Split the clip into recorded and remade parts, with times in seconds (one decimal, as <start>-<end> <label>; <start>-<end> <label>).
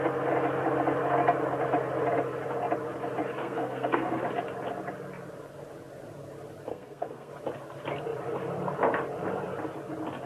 0.0-3.4 recorded; 3.4-4.2 remade; 4.2-6.7 recorded; 6.7-7.3 remade; 7.3-10.3 recorded